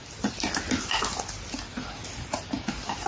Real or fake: real